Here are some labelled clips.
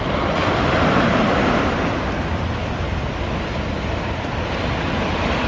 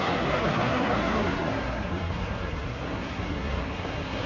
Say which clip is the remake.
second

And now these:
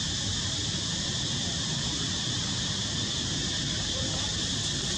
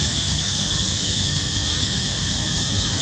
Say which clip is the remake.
second